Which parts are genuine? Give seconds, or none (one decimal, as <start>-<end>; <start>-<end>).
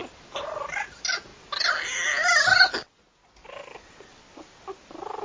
0.0-5.2